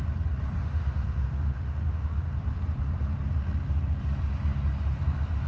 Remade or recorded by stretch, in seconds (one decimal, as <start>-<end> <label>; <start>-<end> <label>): 0.0-0.6 recorded; 0.6-2.3 remade; 2.3-5.5 recorded